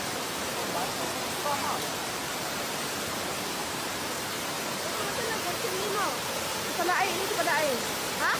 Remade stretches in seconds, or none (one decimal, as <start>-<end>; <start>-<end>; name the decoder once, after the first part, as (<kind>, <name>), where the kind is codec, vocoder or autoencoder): 0.0-0.5 (vocoder, BigVGAN v2); 1.3-8.4